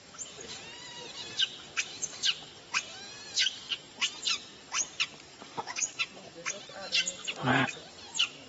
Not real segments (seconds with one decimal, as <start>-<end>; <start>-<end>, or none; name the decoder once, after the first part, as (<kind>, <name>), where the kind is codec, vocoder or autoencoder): 5.5-6.0 (codec, DAC)